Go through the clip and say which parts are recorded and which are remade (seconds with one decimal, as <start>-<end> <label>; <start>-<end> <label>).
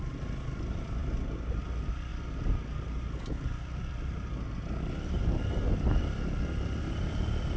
0.0-7.6 recorded